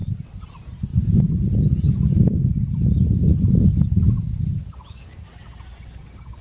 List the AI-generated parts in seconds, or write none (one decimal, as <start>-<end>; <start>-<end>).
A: none